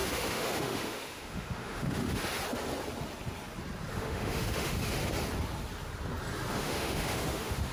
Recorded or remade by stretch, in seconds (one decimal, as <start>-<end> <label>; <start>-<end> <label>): 0.0-2.2 remade; 2.2-3.9 recorded; 3.9-5.0 remade; 5.0-6.5 recorded; 6.5-7.7 remade